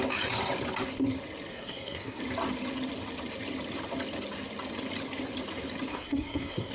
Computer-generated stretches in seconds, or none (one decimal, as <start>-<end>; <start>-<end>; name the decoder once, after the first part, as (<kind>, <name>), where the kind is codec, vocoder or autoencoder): 1.5-2.2 (codec, SNAC); 5.9-6.7

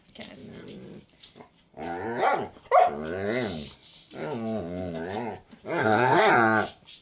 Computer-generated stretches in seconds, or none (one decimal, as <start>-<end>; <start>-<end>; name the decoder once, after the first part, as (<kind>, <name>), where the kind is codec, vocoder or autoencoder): 5.8-6.3 (codec, SNAC)

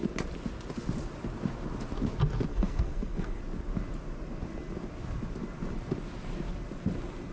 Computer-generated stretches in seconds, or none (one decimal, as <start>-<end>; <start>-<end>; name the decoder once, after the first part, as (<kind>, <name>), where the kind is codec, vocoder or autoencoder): 2.5-3.4 (codec, SNAC)